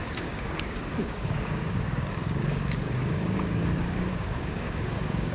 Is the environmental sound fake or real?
fake